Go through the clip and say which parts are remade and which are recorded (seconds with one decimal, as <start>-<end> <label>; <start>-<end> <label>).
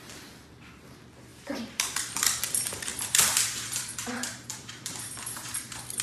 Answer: 0.0-1.3 recorded; 1.3-2.4 remade; 2.4-2.9 recorded; 2.9-5.6 remade; 5.6-6.0 recorded